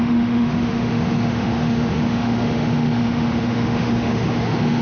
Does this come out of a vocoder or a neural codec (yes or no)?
yes